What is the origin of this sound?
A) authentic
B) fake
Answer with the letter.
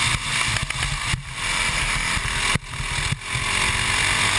A